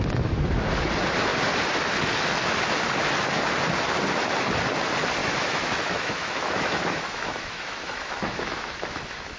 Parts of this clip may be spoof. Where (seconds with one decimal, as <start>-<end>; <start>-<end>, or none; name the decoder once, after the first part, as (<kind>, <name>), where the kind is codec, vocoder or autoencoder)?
5.2-9.4 (autoencoder, DAC-VAE)